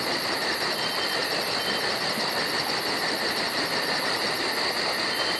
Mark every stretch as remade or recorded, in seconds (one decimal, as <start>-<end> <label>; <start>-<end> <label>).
0.0-5.4 recorded